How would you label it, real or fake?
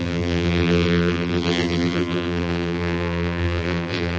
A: fake